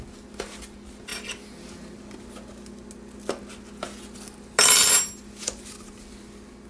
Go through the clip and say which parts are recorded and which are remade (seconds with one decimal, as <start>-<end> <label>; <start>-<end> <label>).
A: 0.0-6.7 recorded